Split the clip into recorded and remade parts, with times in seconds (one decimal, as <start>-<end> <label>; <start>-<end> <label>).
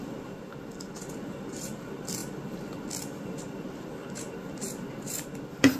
0.0-5.8 recorded